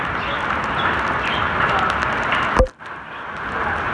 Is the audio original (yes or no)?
yes